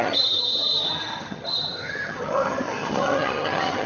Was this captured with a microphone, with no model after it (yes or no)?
no